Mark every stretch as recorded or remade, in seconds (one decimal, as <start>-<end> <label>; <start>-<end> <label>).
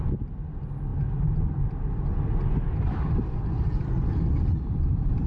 0.0-5.3 recorded